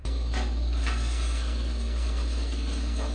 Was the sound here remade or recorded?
remade